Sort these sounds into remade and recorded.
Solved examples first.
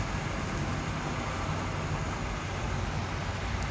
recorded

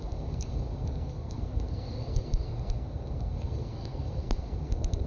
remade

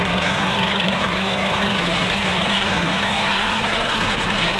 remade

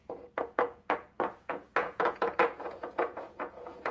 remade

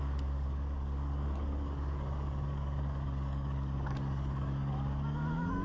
remade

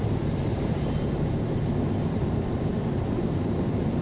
remade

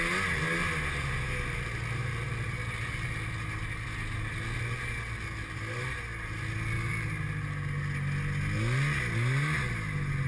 recorded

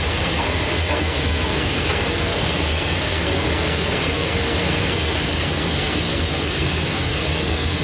remade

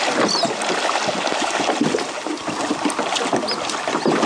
recorded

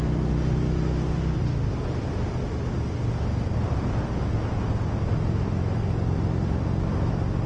recorded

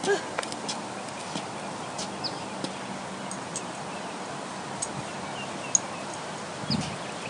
recorded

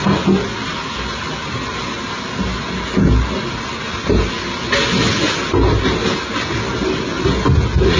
recorded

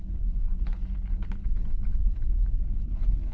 remade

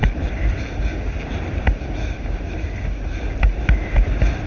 recorded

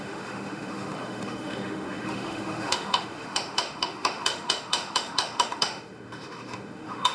remade